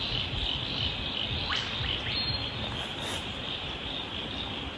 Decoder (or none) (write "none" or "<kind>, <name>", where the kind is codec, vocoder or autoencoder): none